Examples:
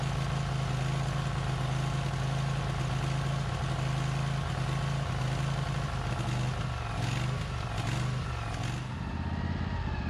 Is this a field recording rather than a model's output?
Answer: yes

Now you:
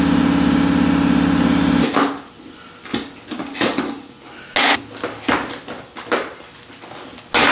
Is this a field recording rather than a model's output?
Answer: yes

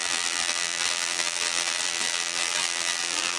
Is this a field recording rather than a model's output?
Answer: no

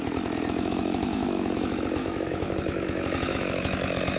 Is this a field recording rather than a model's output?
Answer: no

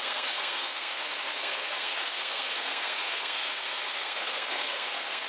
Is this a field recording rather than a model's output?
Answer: no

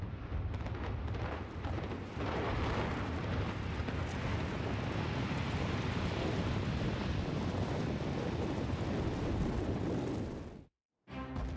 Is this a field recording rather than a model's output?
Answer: yes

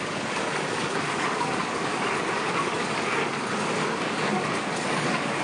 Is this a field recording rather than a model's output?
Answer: no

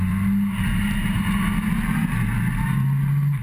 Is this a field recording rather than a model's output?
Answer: yes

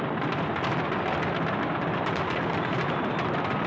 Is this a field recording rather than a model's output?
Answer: yes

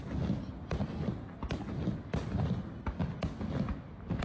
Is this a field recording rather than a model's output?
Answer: yes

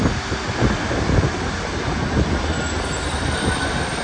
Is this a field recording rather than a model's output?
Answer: yes